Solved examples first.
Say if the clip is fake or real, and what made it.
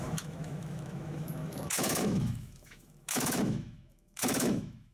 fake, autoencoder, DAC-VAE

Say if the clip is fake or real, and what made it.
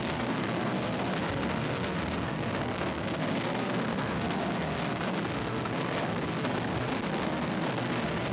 fake, codec, SNAC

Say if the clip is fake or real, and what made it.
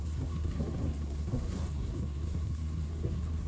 fake, codec, SNAC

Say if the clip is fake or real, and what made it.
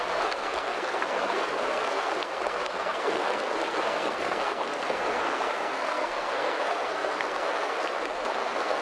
fake, codec, SNAC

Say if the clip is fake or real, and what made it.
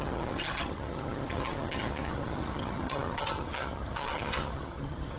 fake, vocoder, HiFi-GAN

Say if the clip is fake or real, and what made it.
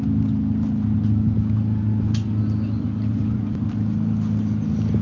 real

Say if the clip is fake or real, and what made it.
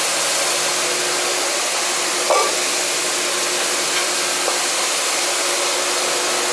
real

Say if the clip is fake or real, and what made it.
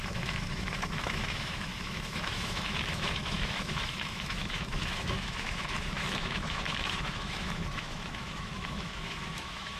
fake, autoencoder, DAC-VAE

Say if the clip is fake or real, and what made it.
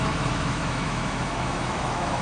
fake, autoencoder, DAC-VAE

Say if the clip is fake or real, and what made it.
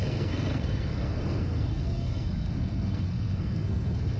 fake, codec, SNAC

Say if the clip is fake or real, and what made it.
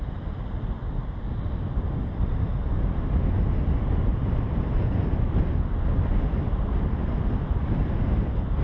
real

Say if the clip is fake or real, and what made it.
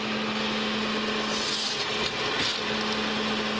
real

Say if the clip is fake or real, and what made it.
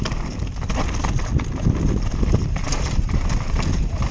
real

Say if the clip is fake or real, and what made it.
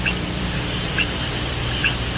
fake, vocoder, BigVGAN v2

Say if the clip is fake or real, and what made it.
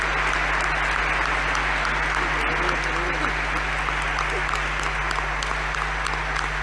real